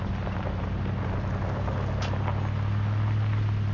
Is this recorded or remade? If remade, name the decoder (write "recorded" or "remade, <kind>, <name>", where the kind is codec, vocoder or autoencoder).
recorded